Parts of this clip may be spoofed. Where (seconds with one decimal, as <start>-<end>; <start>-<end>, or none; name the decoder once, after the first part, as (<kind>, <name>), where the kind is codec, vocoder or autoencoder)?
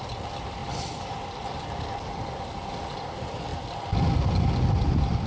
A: none